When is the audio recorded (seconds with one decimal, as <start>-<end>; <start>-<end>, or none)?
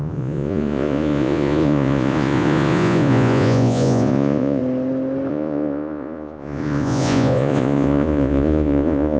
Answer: 4.6-5.3